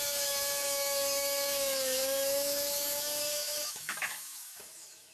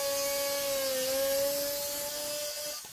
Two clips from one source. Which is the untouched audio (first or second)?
second